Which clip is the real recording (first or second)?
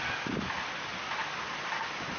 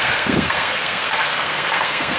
first